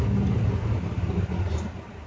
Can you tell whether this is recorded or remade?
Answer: recorded